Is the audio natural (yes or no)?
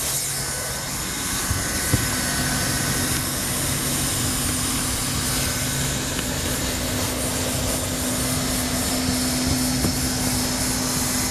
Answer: yes